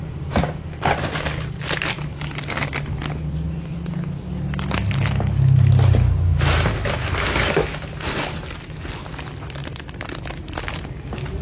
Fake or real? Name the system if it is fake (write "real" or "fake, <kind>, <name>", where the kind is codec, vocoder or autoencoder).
real